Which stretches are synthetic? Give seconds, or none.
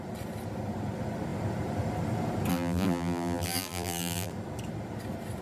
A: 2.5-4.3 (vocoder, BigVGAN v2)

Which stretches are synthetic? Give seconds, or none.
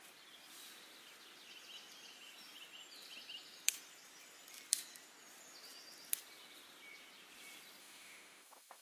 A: 7.8-8.8 (autoencoder, DAC-VAE)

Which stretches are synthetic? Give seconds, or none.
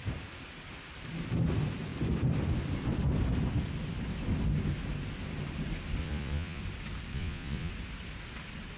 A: 6.0-6.6 (vocoder, Vocos); 7.1-7.7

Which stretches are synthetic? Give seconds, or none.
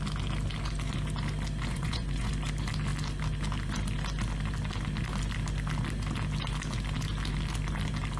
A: 1.7-2.3 (vocoder, Vocos)